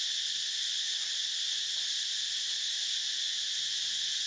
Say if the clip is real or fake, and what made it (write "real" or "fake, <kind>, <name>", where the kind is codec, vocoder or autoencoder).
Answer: real